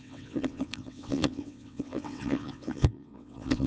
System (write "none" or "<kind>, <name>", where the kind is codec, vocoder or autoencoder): vocoder, WaveNeXt